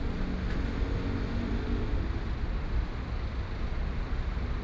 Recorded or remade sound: recorded